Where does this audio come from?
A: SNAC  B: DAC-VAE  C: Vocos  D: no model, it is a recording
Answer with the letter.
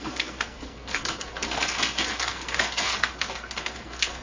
A